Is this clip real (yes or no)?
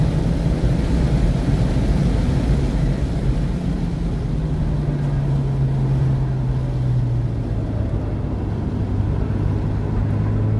yes